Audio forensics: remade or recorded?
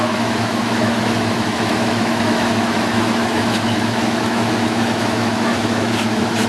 remade